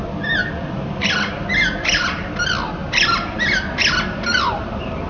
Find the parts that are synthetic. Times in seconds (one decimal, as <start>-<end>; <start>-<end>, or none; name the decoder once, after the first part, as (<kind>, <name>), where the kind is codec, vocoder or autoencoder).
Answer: 0.4-1.1 (vocoder, BigVGAN v2)